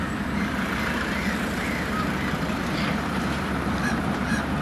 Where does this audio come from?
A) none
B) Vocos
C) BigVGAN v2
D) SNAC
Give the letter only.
C